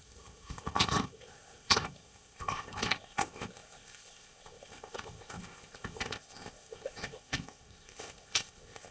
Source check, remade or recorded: remade